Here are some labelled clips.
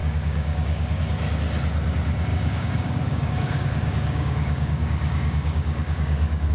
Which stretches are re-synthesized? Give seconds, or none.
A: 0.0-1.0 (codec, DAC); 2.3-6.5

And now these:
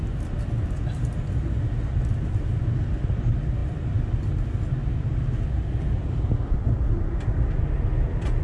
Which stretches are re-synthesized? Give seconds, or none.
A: none